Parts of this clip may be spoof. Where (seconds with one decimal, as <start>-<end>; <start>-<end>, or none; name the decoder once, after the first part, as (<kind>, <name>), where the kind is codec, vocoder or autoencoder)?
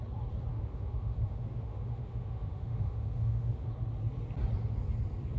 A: 0.5-3.7 (autoencoder, DAC-VAE)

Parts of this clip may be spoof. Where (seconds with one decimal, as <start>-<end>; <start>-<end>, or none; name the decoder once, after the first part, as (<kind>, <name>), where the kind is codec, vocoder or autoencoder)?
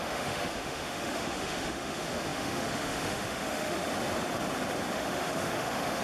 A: 0.0-3.9 (autoencoder, DAC-VAE); 4.9-6.0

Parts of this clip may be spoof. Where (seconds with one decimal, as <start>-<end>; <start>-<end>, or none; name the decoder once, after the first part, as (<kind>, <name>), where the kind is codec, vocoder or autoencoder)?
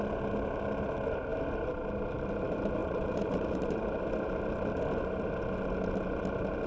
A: 2.8-4.0 (vocoder, BigVGAN v2)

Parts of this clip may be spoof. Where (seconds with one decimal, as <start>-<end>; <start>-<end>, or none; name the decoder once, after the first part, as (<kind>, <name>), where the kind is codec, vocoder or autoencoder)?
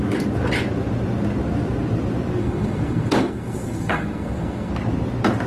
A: 2.4-4.7 (codec, SNAC)